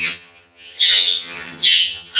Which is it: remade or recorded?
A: remade